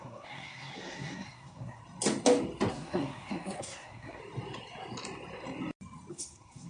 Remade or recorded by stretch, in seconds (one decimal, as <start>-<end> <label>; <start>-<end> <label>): 0.0-1.8 remade; 1.8-2.7 recorded; 2.7-4.2 remade; 4.2-6.1 recorded; 6.1-6.7 remade